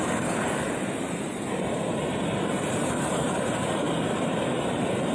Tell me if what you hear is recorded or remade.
remade